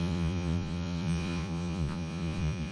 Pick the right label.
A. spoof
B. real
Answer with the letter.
A